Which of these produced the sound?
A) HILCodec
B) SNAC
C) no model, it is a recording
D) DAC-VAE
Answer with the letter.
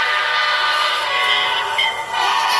B